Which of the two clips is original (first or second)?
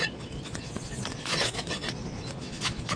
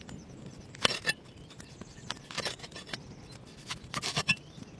second